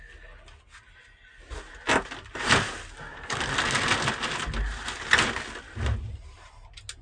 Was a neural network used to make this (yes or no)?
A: no